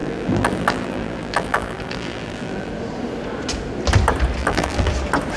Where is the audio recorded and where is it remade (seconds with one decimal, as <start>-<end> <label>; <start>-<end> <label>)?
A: 0.0-2.7 remade; 2.7-4.4 recorded; 4.4-4.9 remade; 4.9-5.4 recorded